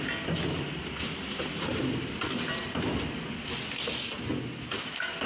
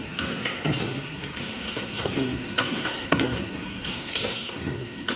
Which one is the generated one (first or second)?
second